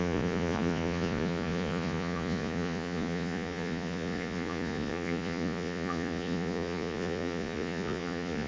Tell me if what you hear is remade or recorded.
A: remade